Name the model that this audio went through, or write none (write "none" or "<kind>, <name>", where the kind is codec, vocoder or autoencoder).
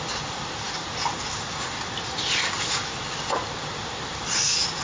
none